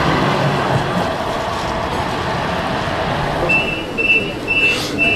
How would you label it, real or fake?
real